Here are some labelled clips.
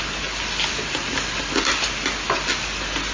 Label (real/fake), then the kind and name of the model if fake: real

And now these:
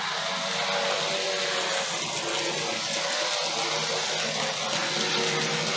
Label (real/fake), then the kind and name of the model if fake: real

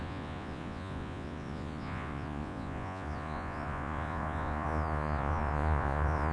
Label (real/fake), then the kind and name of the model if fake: fake, vocoder, Vocos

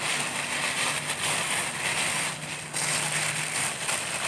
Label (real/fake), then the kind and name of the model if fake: real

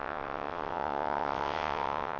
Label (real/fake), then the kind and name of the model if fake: fake, vocoder, WaveNeXt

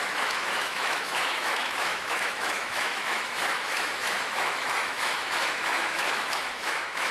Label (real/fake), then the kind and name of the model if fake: fake, autoencoder, DAC-VAE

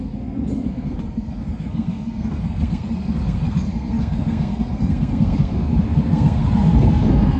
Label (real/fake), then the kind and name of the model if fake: fake, codec, SNAC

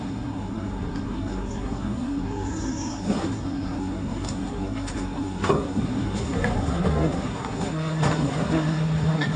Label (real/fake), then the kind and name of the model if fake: fake, codec, SNAC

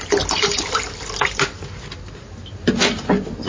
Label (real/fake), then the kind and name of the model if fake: real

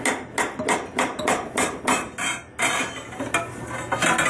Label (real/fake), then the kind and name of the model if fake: real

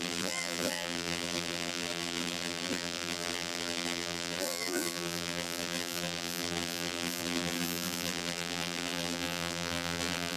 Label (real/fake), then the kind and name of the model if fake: fake, vocoder, BigVGAN v2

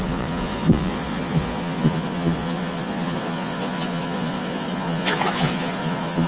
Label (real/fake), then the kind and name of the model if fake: fake, vocoder, Vocos